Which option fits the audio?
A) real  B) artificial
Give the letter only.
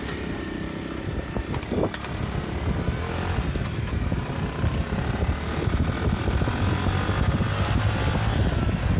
A